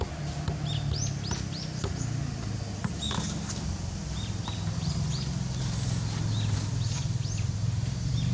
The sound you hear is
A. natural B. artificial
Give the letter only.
A